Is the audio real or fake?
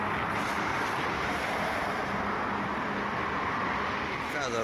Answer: real